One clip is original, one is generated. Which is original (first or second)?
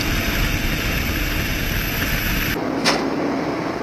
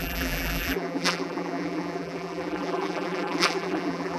first